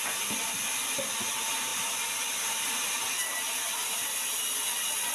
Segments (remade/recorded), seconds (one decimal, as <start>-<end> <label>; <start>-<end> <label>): 0.0-5.1 recorded